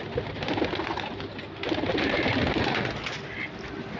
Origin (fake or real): real